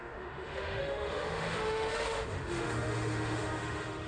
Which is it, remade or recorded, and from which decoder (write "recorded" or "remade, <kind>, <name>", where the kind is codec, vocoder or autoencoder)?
remade, autoencoder, DAC-VAE